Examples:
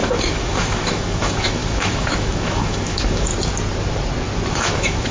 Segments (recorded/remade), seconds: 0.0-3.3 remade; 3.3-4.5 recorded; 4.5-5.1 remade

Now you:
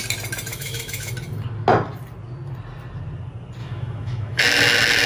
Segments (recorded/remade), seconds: 0.0-0.5 recorded; 0.5-1.1 remade; 1.1-3.6 recorded; 3.6-4.4 remade; 4.4-5.1 recorded

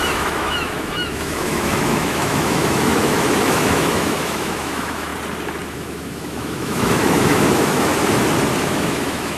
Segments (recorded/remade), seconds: 0.0-5.1 remade; 5.1-5.7 recorded; 5.7-7.9 remade; 7.9-8.6 recorded; 8.6-9.4 remade

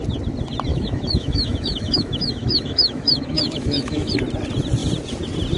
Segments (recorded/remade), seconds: 0.0-0.7 recorded; 0.7-4.1 remade; 4.1-5.6 recorded

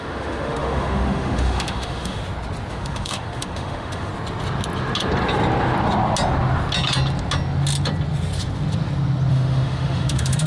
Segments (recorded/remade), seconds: 0.0-2.2 remade; 2.2-2.7 recorded; 2.7-4.1 remade; 4.1-9.3 recorded; 9.3-10.5 remade

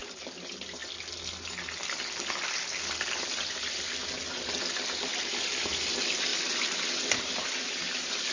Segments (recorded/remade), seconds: 0.0-8.3 recorded

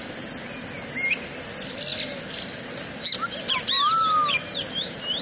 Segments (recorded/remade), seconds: 0.0-5.2 recorded

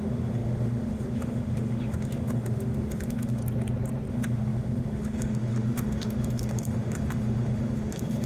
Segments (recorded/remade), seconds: 0.0-3.4 remade; 3.4-4.1 recorded; 4.1-8.3 remade